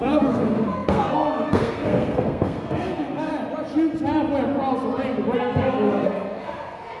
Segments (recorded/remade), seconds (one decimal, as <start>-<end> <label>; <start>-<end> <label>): 0.0-3.3 remade; 3.3-5.4 recorded; 5.4-7.0 remade